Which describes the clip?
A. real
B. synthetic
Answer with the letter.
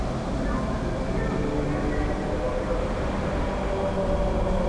A